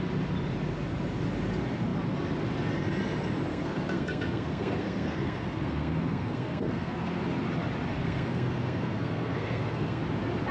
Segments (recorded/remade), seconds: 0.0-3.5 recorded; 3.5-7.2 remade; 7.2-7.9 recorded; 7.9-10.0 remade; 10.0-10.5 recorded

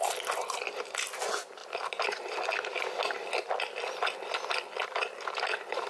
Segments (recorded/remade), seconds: 0.0-1.6 recorded; 1.6-2.4 remade; 2.4-5.9 recorded

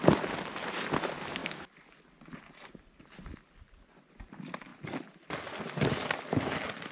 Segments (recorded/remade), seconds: 0.0-6.9 recorded